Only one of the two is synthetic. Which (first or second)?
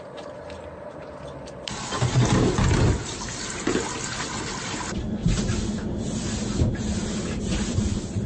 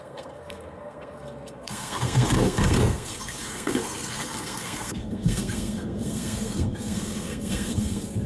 second